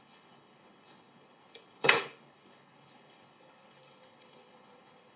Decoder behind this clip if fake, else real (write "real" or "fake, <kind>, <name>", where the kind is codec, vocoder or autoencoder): fake, codec, HILCodec